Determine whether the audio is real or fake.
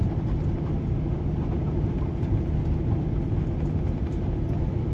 real